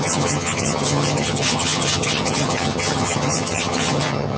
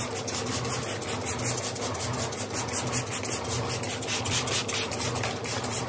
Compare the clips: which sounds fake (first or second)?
first